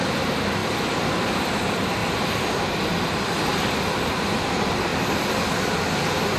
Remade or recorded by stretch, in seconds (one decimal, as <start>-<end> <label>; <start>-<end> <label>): 0.0-2.0 remade; 2.0-2.6 recorded; 2.6-4.9 remade; 4.9-6.4 recorded

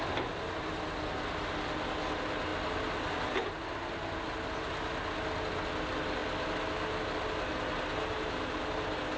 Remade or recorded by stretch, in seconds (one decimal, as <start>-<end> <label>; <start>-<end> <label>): 0.0-9.2 recorded

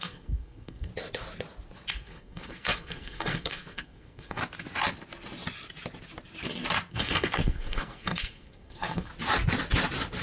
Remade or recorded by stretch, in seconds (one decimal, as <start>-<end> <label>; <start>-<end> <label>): 0.0-0.9 remade; 0.9-1.9 recorded; 1.9-4.4 remade; 4.4-6.9 recorded; 6.9-9.1 remade; 9.1-10.2 recorded

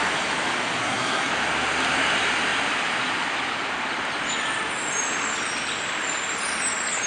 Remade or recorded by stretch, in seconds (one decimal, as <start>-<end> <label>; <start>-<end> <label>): 0.0-0.8 recorded; 0.8-1.3 remade; 1.3-7.1 recorded

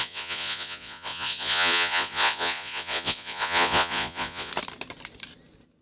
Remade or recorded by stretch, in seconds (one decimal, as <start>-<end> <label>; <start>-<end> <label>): 0.0-4.5 remade; 4.5-5.8 recorded

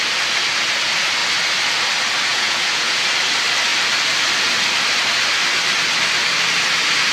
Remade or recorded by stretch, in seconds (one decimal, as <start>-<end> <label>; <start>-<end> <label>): 0.0-2.3 recorded; 2.3-3.0 remade; 3.0-7.1 recorded